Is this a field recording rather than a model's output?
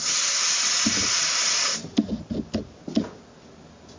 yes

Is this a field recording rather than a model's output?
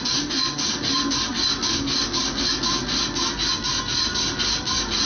yes